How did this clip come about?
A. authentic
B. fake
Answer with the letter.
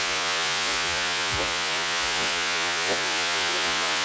B